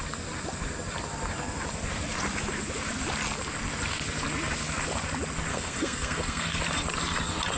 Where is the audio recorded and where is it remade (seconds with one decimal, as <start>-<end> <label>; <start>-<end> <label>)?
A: 0.0-5.5 recorded; 5.5-6.6 remade; 6.6-7.6 recorded